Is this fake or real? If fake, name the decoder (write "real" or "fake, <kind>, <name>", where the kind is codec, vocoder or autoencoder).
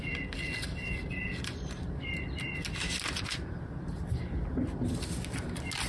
real